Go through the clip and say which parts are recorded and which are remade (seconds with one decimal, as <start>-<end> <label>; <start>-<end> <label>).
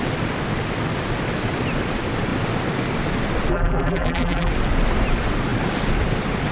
0.0-3.5 recorded; 3.5-4.5 remade; 4.5-6.5 recorded